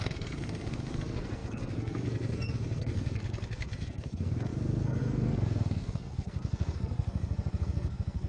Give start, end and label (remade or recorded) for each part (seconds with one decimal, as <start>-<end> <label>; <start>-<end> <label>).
0.0-8.3 remade